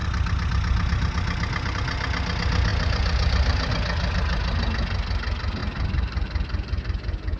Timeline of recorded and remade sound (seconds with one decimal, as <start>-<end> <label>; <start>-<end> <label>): 0.0-2.7 recorded; 2.7-3.7 remade; 3.7-5.6 recorded; 5.6-6.8 remade; 6.8-7.4 recorded